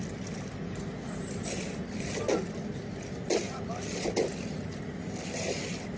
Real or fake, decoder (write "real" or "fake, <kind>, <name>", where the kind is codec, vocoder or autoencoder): fake, vocoder, BigVGAN v2